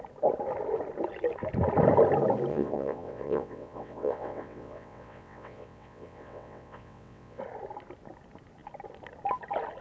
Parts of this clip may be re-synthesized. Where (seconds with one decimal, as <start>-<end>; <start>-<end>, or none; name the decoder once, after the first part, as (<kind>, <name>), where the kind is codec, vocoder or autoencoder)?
2.5-7.4 (vocoder, WaveNeXt)